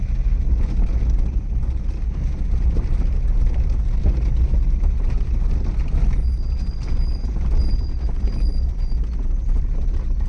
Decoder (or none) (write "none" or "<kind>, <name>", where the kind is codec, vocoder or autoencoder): none